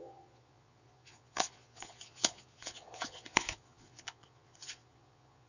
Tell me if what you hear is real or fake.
fake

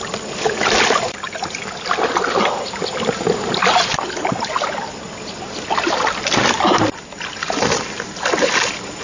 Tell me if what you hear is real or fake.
real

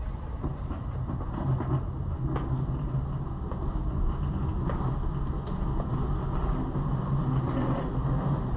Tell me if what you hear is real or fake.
real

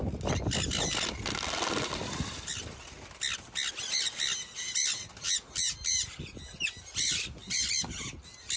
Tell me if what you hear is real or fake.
real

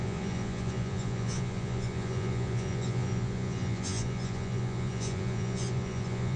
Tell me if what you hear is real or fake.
fake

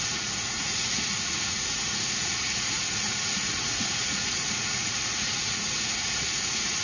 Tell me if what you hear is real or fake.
fake